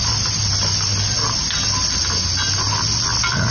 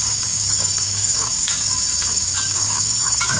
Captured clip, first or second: first